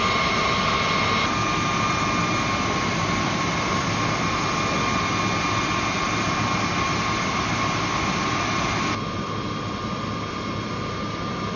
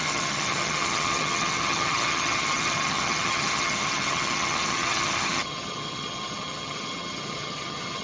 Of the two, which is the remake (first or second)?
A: second